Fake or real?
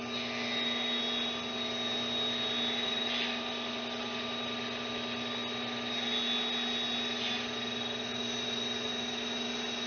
real